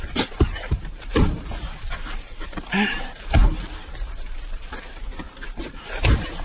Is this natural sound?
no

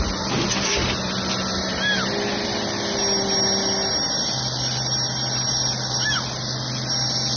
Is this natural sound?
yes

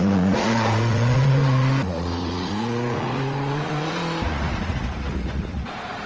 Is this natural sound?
no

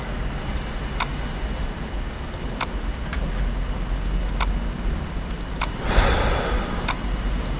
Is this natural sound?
yes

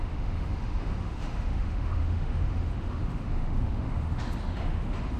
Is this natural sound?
no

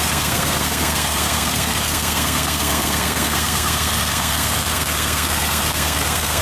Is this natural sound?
no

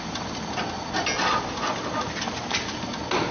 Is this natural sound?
yes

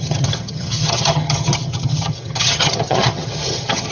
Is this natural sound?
no